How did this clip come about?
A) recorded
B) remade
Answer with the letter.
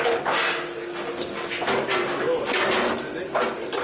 A